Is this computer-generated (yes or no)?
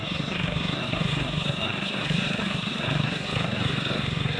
yes